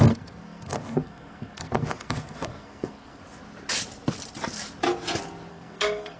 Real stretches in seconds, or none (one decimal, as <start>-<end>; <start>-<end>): 3.2-5.5